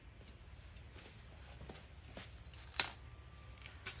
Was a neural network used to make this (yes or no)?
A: no